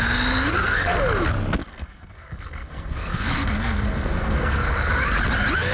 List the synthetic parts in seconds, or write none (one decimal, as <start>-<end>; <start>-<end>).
0.5-1.0; 1.6-4.9